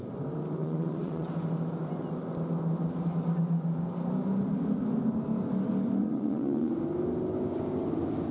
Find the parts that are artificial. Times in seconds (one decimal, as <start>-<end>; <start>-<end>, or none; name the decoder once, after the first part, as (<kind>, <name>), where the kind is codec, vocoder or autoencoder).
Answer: 0.6-1.3 (vocoder, WaveNeXt); 6.0-6.7